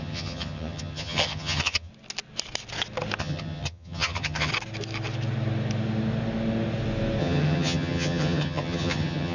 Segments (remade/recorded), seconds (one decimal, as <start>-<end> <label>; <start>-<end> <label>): 0.0-1.9 remade; 1.9-3.2 recorded; 3.2-4.5 remade; 4.5-7.2 recorded; 7.2-9.3 remade